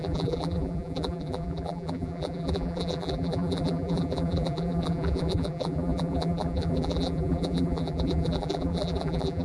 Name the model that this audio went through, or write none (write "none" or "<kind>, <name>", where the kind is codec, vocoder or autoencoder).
vocoder, BigVGAN v2